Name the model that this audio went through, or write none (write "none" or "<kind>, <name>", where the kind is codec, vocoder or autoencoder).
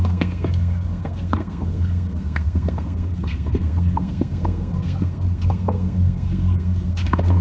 codec, SNAC